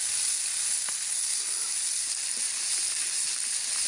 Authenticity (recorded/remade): recorded